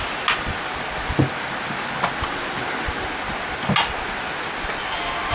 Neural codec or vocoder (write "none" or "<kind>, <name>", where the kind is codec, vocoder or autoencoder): none